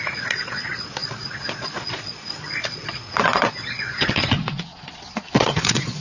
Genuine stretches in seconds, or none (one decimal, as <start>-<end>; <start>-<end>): none